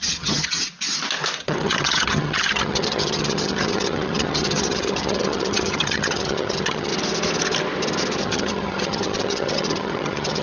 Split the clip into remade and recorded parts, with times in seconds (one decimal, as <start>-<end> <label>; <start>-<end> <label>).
0.0-0.6 remade; 0.6-1.4 recorded; 1.4-6.9 remade; 6.9-8.2 recorded; 8.2-10.4 remade